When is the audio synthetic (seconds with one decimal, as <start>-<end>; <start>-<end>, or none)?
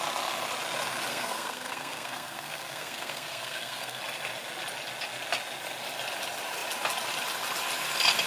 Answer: 1.1-4.0